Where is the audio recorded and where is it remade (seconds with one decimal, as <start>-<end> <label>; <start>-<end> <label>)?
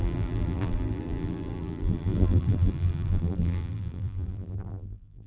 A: 0.0-5.3 remade